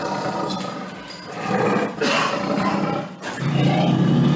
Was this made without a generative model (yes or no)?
yes